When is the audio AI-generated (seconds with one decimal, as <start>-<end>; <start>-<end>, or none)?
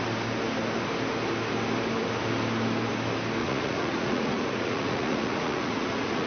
3.4-6.3